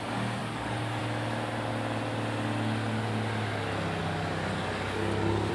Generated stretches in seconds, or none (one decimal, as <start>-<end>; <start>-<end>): 0.4-1.0; 4.0-5.5